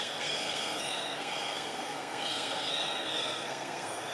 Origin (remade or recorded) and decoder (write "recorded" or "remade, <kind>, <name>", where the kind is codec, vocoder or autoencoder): remade, codec, SNAC